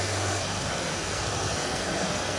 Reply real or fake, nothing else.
fake